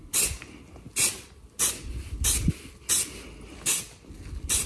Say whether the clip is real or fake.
real